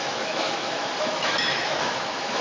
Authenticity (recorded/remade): remade